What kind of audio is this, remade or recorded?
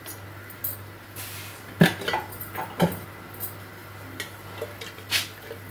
recorded